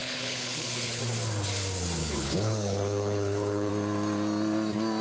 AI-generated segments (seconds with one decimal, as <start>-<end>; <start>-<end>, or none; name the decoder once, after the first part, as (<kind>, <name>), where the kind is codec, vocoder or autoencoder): 0.0-1.0 (codec, HILCodec); 2.0-3.7

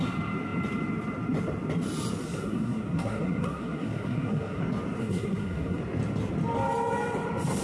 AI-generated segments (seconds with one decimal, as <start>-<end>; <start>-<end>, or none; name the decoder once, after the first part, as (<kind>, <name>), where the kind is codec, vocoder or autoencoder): 2.2-4.6 (codec, SNAC); 5.0-5.8